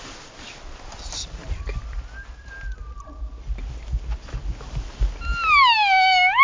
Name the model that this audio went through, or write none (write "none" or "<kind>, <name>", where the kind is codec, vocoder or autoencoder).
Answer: none